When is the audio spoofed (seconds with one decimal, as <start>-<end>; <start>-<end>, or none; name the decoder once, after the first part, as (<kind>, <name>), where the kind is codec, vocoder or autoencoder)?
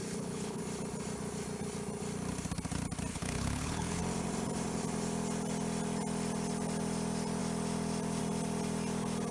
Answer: 0.0-0.6 (codec, HILCodec); 3.1-4.0